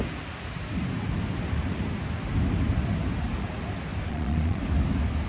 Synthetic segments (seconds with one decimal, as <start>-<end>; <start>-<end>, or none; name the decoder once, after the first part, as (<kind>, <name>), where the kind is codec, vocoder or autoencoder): 4.1-4.6 (vocoder, Vocos)